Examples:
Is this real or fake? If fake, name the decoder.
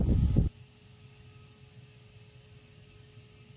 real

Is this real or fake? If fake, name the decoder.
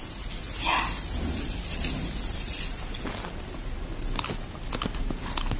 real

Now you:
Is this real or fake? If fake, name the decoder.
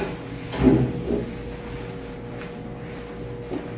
real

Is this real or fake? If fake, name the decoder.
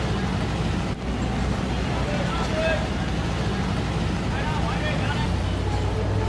real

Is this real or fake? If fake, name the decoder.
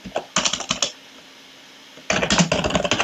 real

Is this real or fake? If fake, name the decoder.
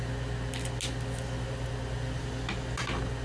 real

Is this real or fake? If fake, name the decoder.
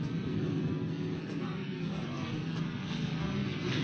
fake, codec, SNAC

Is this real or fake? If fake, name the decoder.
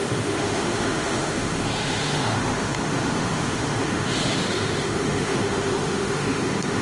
fake, autoencoder, DAC-VAE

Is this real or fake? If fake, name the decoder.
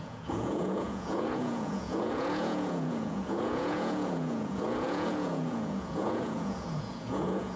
fake, vocoder, Vocos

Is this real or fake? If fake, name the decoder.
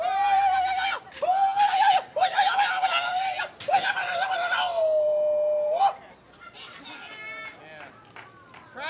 real